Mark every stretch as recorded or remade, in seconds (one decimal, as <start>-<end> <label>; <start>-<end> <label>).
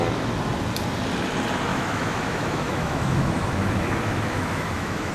0.0-1.7 recorded; 1.7-5.1 remade